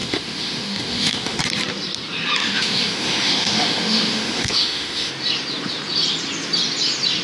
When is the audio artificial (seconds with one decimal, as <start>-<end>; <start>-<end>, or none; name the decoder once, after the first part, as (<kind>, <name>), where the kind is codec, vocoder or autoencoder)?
0.0-1.4 (autoencoder, DAC-VAE); 2.4-5.1